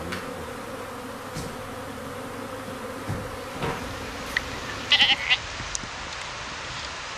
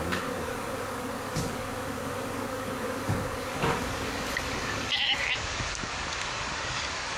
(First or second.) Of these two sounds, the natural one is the first